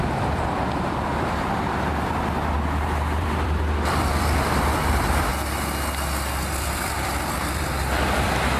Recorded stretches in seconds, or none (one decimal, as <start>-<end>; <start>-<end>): 1.9-3.2; 5.3-6.5